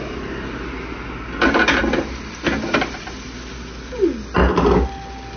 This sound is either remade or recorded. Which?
recorded